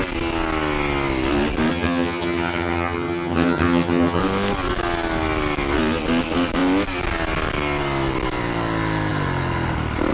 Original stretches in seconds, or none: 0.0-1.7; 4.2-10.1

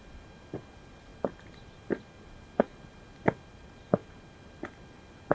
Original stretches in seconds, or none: 0.0-5.3